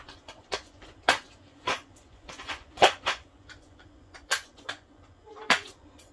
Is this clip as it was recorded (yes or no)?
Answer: no